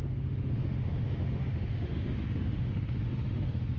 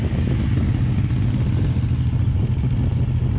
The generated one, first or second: first